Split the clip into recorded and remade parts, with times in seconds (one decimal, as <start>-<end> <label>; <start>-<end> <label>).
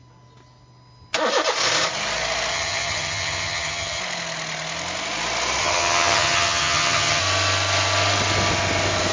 0.0-2.5 recorded; 2.5-4.0 remade; 4.0-5.6 recorded; 5.6-7.2 remade; 7.2-9.1 recorded